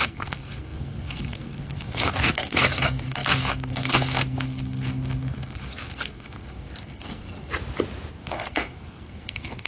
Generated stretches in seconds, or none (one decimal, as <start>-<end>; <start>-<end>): 0.0-7.5; 8.1-9.7